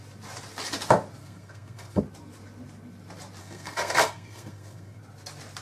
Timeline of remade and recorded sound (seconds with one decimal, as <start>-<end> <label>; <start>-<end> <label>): 0.0-1.2 recorded; 1.2-2.0 remade; 2.0-3.4 recorded; 3.4-5.0 remade; 5.0-5.6 recorded